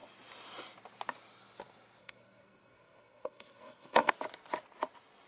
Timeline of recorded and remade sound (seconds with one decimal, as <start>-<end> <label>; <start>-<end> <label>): 0.0-2.0 recorded; 2.0-4.1 remade; 4.1-5.3 recorded